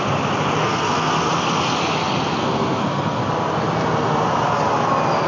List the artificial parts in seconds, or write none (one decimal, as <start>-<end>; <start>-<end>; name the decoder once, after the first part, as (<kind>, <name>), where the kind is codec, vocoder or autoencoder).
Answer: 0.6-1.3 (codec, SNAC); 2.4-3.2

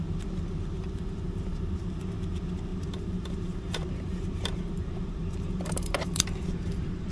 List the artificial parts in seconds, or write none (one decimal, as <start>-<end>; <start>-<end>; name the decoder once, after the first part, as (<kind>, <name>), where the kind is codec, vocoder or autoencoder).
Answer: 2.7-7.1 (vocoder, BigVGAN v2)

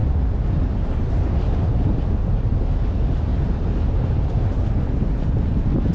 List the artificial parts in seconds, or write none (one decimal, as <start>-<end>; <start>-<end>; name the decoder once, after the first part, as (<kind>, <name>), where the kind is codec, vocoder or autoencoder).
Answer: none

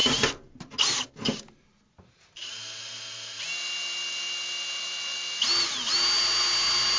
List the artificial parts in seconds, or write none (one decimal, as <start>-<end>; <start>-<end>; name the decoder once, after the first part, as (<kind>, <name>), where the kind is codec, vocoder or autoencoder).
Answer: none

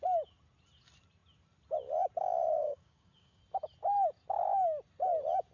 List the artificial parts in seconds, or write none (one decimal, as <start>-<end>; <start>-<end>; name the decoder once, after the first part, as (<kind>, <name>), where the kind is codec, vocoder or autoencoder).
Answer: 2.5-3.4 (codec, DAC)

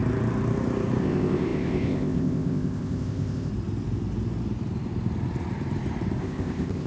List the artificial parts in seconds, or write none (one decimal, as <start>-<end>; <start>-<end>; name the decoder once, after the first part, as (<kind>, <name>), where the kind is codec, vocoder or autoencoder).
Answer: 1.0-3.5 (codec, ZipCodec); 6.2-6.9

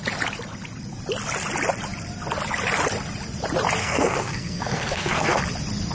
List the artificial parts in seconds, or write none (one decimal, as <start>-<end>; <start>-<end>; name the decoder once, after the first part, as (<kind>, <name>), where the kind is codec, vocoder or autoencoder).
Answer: 3.8-5.4 (codec, SNAC)

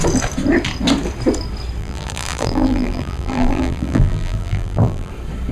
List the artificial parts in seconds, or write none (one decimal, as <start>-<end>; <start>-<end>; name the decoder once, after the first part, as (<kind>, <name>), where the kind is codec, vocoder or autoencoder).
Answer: 1.8-5.1 (vocoder, BigVGAN v2)